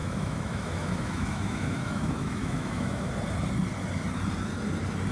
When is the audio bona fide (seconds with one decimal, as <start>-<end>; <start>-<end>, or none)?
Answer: 3.1-5.1